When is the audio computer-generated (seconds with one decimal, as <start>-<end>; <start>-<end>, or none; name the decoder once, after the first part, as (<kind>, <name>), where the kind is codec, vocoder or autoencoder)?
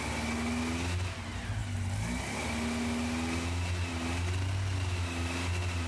none